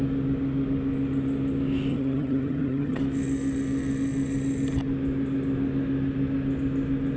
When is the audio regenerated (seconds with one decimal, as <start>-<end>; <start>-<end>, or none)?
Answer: 1.9-3.0